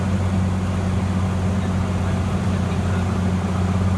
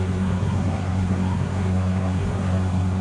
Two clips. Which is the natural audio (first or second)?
first